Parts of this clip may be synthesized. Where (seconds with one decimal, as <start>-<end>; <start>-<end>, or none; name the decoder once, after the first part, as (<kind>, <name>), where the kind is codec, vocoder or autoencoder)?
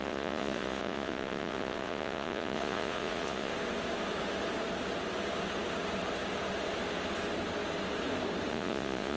0.0-3.5 (vocoder, Vocos); 8.5-9.2